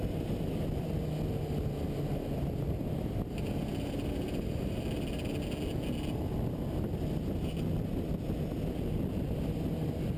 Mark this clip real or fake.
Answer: real